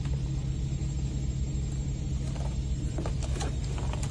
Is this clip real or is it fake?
real